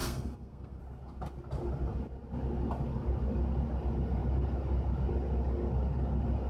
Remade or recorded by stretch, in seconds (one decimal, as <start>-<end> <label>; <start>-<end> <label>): 0.0-0.8 remade; 0.8-6.5 recorded